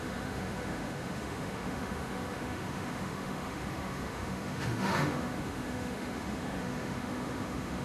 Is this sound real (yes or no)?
no